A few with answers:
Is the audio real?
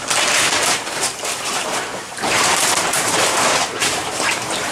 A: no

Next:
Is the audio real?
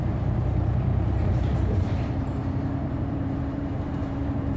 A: no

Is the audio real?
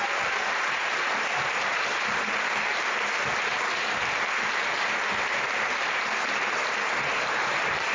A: no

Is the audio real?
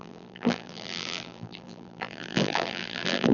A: no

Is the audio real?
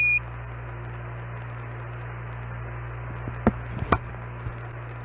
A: yes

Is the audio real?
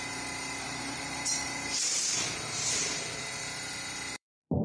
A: no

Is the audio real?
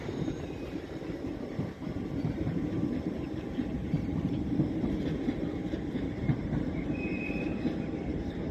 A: no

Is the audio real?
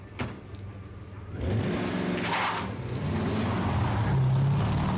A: yes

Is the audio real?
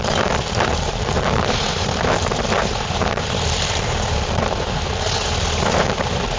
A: no